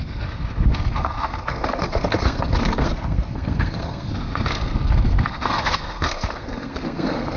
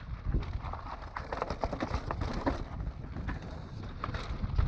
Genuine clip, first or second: second